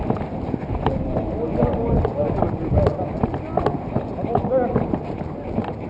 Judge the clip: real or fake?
real